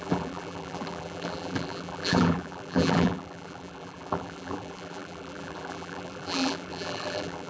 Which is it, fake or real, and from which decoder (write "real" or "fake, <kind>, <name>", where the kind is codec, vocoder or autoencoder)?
fake, vocoder, BigVGAN v2